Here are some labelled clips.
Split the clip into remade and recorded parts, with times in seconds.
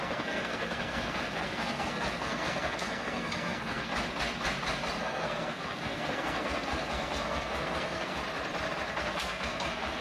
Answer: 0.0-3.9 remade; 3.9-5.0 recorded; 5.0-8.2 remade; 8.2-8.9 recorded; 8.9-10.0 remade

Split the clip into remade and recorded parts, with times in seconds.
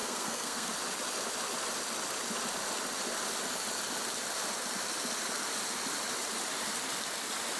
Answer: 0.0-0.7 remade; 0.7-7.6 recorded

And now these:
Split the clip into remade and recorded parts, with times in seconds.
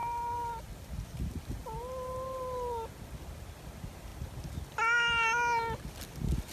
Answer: 0.0-6.5 recorded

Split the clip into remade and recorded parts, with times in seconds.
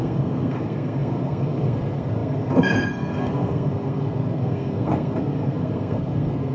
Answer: 0.0-6.5 remade